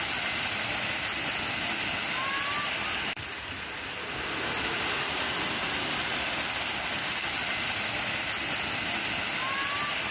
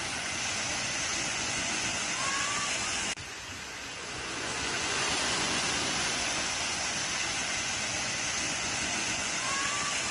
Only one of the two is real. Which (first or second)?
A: first